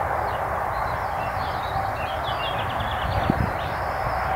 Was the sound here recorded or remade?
recorded